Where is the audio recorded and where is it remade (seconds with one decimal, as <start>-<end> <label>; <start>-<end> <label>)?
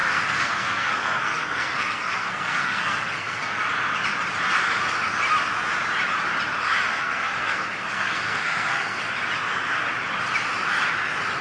0.0-3.6 remade; 3.6-6.9 recorded; 6.9-9.0 remade; 9.0-11.4 recorded